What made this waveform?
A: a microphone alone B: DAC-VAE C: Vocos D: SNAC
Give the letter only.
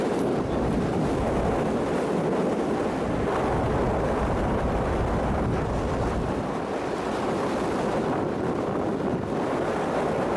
A